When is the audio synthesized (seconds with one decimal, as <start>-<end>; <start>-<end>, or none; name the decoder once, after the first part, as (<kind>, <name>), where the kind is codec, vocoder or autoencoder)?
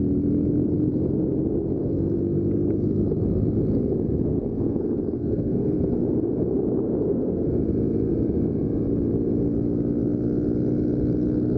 4.3-6.0 (codec, SNAC); 7.0-7.5